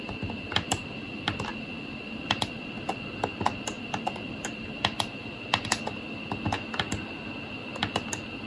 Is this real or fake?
real